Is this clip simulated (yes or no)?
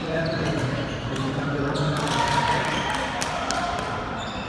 no